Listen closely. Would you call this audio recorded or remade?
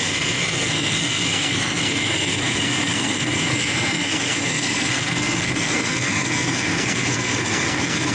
remade